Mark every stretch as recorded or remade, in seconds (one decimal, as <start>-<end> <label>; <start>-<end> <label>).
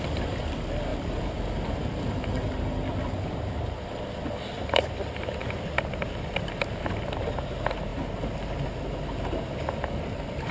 0.0-0.9 recorded; 0.9-1.8 remade; 1.8-10.5 recorded